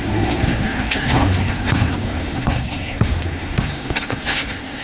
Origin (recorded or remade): remade